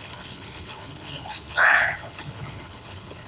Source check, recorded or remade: remade